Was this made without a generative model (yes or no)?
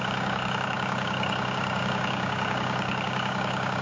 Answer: no